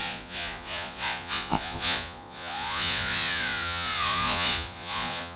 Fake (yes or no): yes